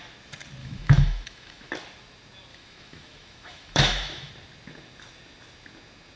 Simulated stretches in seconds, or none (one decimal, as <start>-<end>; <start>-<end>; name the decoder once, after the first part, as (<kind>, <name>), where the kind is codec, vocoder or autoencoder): 0.6-1.7 (autoencoder, DAC-VAE); 2.5-4.3